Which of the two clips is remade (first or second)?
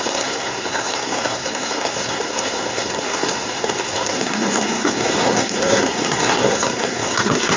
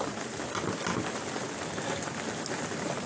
first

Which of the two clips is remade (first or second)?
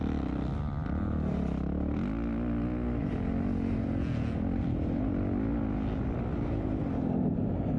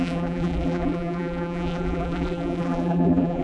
second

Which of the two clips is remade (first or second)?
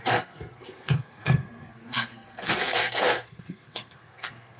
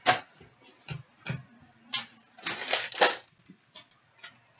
first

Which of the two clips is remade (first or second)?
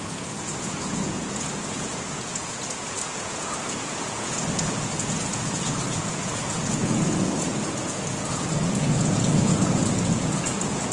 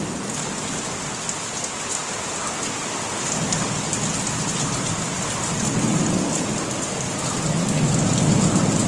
first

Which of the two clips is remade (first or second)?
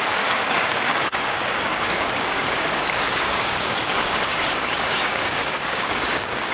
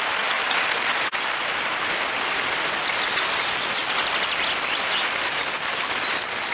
first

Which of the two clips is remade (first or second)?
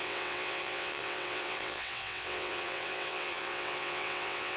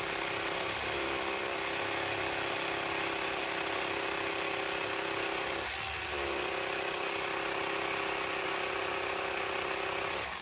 first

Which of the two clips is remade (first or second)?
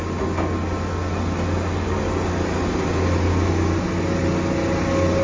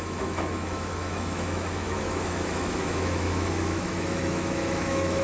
second